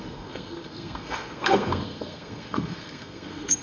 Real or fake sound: fake